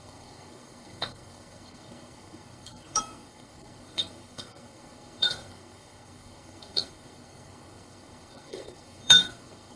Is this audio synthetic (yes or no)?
yes